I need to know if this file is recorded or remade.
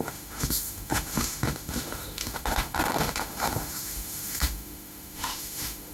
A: remade